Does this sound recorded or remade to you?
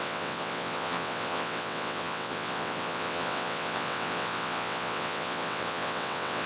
remade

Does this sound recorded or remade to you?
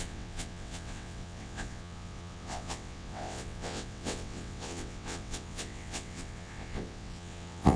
remade